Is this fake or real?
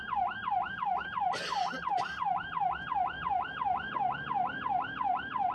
real